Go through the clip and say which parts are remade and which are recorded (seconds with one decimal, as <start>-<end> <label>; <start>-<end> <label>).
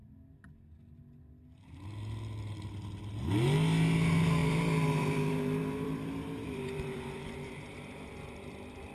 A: 0.0-4.4 recorded; 4.4-8.9 remade